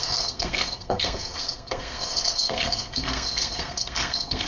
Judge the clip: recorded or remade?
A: remade